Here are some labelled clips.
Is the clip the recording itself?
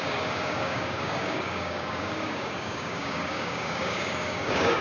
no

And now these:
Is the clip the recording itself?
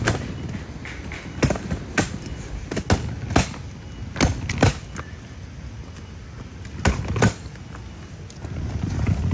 yes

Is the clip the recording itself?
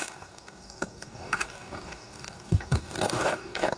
no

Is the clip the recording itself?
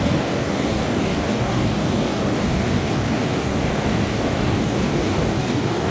no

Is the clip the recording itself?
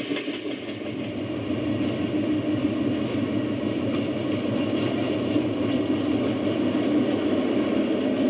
yes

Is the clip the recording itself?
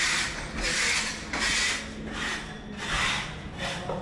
yes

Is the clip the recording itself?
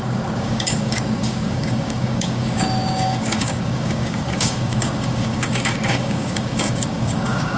no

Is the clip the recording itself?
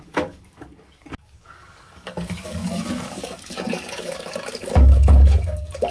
no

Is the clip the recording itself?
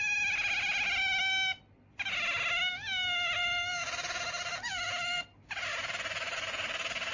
yes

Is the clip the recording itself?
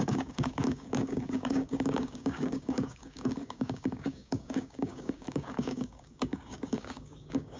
no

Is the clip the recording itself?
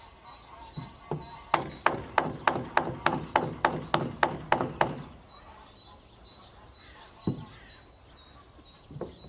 yes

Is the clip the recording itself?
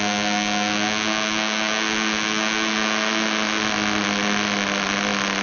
yes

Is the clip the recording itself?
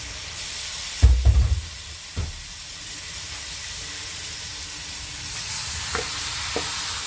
yes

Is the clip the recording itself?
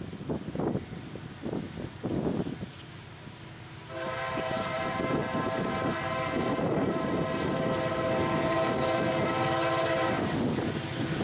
yes